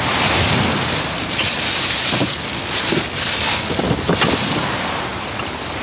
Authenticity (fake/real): real